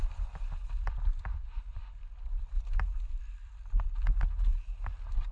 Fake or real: real